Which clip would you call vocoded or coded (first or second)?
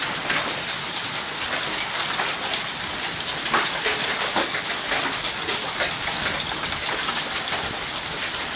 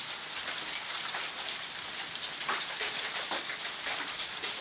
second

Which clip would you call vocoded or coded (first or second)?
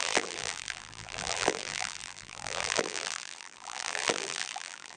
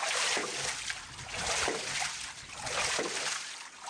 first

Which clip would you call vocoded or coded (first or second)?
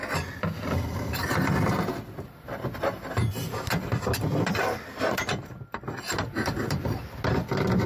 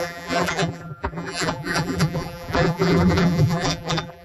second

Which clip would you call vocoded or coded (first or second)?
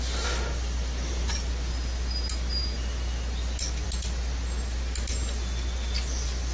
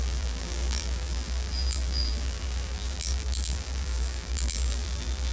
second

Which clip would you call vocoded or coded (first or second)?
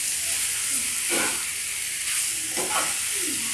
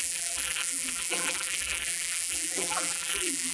second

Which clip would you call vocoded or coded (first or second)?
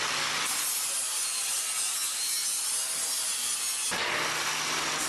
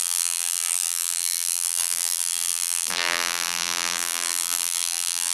second